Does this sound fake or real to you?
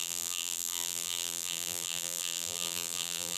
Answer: fake